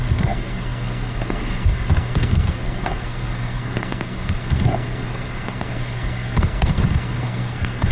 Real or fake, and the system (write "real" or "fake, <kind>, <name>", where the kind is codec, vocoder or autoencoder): fake, codec, SNAC